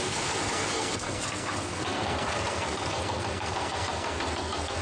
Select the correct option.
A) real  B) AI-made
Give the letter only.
B